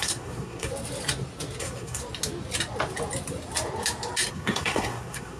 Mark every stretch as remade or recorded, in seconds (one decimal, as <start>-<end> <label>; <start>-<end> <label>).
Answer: 0.0-0.7 remade; 0.7-1.6 recorded; 1.6-2.0 remade; 2.0-4.3 recorded; 4.3-5.4 remade

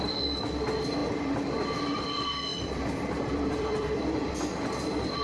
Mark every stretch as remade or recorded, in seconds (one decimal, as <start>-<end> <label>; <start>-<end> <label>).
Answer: 0.0-2.5 recorded; 2.5-4.7 remade; 4.7-5.2 recorded

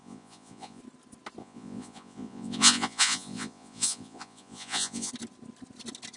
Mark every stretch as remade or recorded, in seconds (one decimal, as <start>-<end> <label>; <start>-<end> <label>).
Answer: 0.0-0.8 remade; 0.8-1.4 recorded; 1.4-5.1 remade; 5.1-6.2 recorded

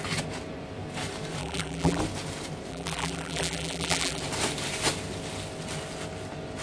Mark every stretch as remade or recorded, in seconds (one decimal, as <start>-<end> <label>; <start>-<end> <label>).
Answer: 0.0-1.4 recorded; 1.4-2.0 remade; 2.0-2.7 recorded; 2.7-4.2 remade; 4.2-6.6 recorded